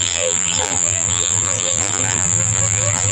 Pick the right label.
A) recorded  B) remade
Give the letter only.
B